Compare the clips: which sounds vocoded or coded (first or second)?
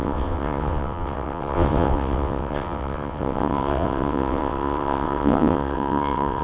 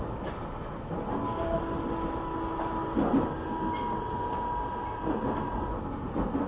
first